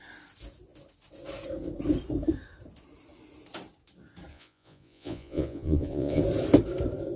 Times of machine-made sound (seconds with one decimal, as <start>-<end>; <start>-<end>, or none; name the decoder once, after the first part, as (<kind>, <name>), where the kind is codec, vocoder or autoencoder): 4.3-6.2 (vocoder, Vocos)